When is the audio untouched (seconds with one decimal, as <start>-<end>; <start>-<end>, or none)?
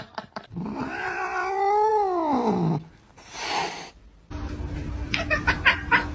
0.8-1.9; 3.6-4.9